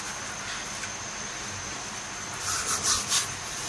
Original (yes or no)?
yes